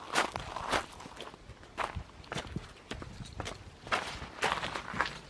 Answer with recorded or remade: recorded